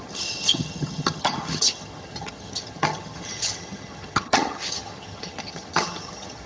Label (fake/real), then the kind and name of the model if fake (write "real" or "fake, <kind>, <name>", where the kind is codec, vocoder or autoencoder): fake, vocoder, HiFi-GAN